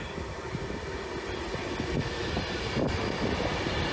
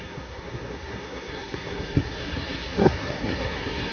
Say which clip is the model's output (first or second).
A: second